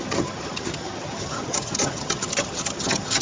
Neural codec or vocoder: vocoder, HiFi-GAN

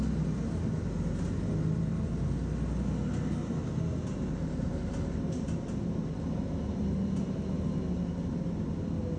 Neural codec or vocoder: none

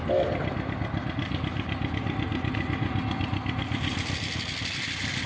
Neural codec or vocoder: none